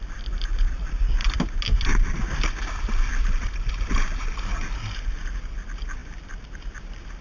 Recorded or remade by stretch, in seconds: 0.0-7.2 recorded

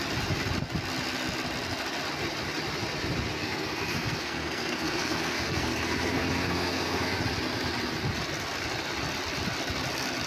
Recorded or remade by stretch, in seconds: 0.0-3.4 recorded; 3.4-7.2 remade; 7.2-10.3 recorded

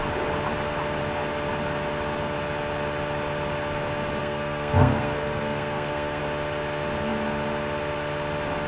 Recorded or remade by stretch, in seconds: 0.0-4.2 recorded; 4.2-6.2 remade; 6.2-8.7 recorded